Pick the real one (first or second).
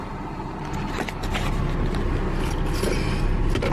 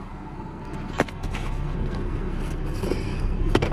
first